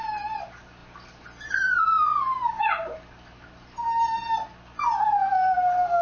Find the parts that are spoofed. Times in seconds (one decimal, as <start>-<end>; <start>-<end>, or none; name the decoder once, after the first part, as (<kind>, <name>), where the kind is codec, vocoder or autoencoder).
none